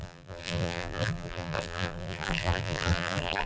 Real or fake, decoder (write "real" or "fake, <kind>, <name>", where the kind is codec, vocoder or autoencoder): fake, vocoder, BigVGAN v2